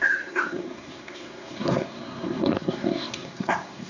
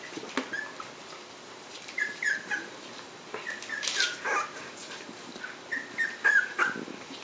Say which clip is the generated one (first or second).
first